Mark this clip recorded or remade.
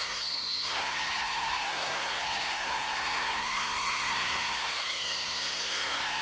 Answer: remade